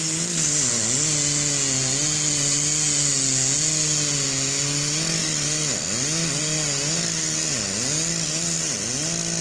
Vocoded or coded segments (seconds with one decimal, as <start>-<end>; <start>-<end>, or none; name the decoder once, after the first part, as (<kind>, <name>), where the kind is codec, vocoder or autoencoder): none